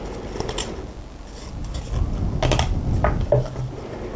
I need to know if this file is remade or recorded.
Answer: recorded